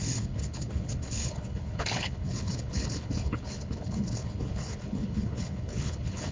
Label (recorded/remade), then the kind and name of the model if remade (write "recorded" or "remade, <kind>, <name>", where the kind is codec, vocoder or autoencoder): remade, codec, HILCodec